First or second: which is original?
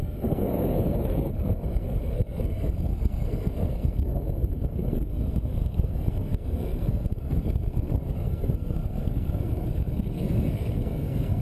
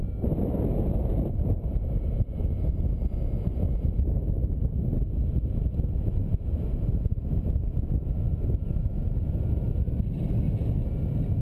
second